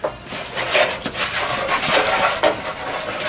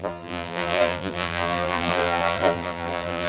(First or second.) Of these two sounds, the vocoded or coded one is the second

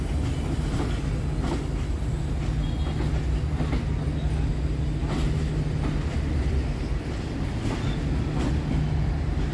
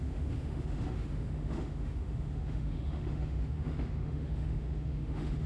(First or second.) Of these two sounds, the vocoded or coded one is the second